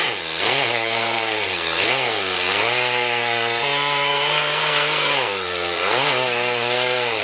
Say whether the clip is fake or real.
fake